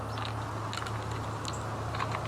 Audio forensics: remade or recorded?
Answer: recorded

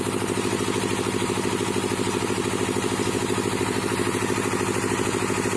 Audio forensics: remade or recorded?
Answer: recorded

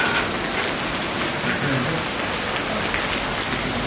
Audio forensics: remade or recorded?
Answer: recorded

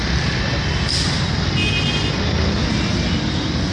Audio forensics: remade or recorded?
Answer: recorded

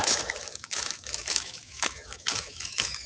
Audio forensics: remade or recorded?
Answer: remade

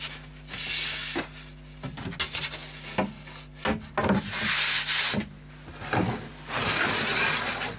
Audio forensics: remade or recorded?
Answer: recorded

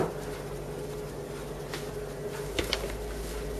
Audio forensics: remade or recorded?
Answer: recorded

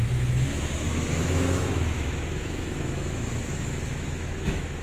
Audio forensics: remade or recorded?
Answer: remade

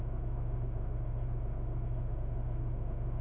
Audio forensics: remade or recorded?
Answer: remade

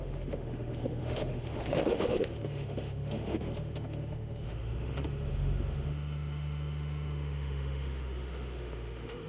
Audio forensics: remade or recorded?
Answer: remade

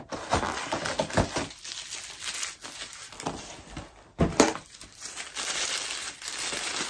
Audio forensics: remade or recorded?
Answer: recorded